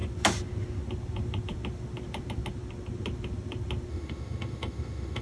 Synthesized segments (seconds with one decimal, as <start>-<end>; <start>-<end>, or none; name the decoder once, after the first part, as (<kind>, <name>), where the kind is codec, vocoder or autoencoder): 3.9-5.2 (autoencoder, DAC-VAE)